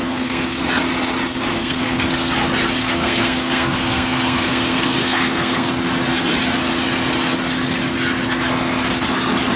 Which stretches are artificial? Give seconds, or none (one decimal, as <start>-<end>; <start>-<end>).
0.0-0.6; 1.5-2.0; 2.8-5.7